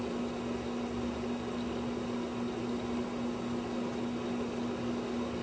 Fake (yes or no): no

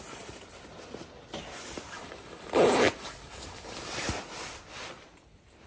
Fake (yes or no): no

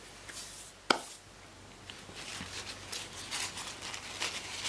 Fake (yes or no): no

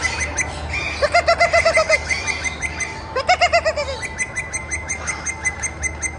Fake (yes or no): no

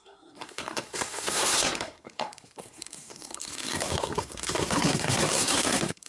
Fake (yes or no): yes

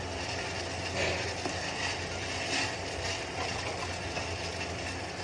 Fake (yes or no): no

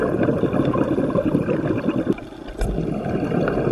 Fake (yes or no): no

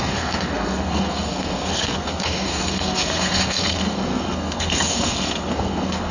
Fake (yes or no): yes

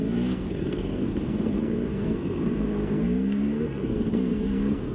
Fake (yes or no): yes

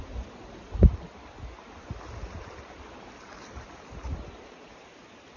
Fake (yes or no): no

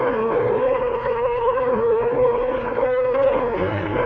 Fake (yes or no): yes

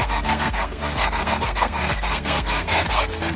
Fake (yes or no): yes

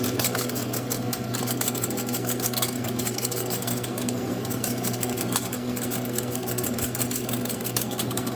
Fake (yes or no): yes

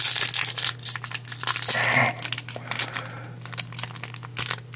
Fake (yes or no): no